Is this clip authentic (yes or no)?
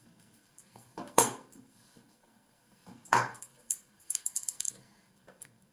no